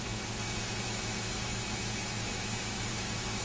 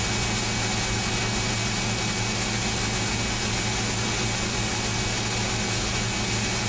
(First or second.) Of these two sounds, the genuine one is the second